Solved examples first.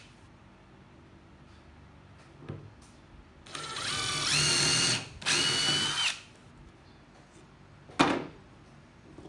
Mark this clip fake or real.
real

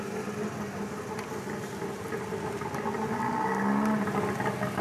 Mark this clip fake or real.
real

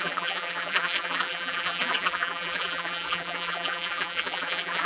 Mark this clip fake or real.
fake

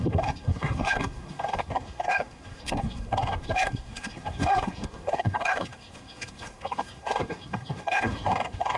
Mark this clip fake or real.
fake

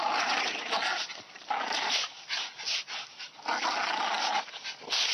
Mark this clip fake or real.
real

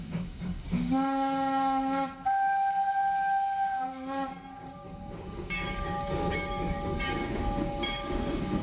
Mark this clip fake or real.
fake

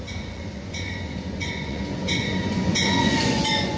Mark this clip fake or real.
fake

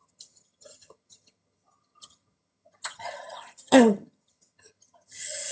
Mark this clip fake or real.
fake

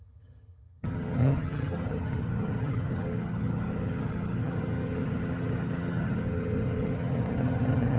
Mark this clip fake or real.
fake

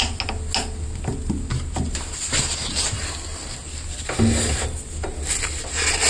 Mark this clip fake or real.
real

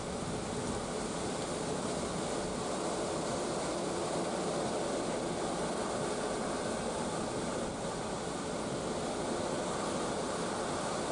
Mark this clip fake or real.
real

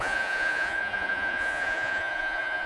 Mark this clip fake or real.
fake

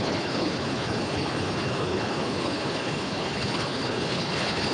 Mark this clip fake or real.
fake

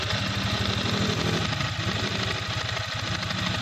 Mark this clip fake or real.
real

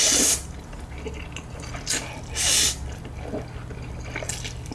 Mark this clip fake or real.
real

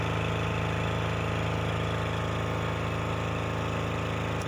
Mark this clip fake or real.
real